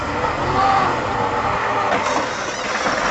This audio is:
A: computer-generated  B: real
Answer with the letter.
B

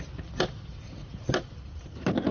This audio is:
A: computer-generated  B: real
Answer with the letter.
B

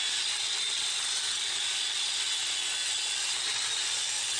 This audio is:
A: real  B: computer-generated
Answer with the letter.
A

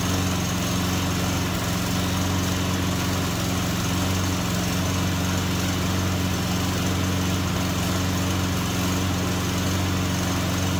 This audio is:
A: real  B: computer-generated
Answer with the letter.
A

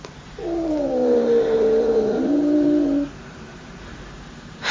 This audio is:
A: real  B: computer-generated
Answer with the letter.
B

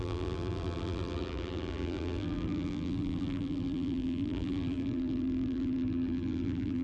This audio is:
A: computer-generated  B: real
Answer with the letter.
A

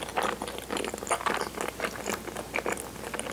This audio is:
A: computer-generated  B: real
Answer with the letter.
B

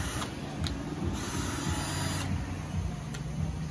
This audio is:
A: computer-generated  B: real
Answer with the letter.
B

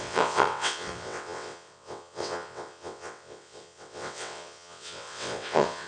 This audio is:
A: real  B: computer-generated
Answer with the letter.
B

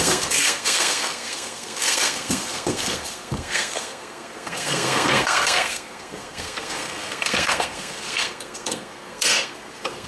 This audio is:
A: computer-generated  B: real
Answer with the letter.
A